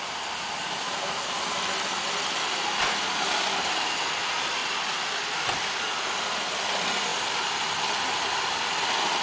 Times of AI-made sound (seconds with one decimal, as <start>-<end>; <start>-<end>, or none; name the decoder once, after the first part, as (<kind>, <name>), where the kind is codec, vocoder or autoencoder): 0.0-4.6 (vocoder, BigVGAN v2); 5.6-7.1; 7.9-9.2